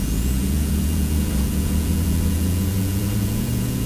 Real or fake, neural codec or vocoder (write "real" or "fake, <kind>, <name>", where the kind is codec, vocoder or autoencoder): fake, vocoder, Vocos